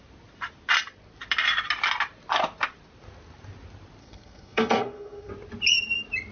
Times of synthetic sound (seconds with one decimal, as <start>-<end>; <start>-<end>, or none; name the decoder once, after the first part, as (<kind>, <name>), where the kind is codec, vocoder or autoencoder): 4.0-5.3 (codec, SNAC)